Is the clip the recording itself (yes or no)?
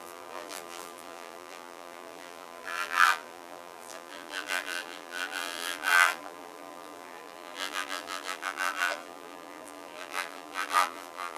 no